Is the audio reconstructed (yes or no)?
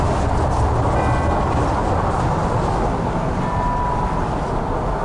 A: no